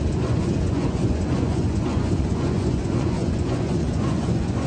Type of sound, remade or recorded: remade